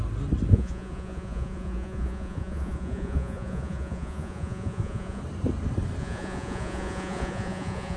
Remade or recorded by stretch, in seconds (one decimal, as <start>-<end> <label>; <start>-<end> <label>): 0.0-0.5 recorded; 0.5-5.2 remade; 5.2-6.0 recorded; 6.0-8.0 remade